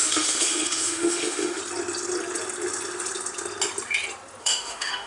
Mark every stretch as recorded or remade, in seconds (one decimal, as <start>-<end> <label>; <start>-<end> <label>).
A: 0.0-1.6 remade; 1.6-4.4 recorded; 4.4-5.1 remade